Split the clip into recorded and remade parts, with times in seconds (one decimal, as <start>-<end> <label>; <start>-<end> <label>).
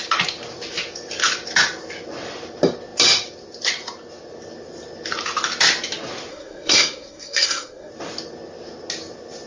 0.0-6.3 recorded; 6.3-7.9 remade; 7.9-9.5 recorded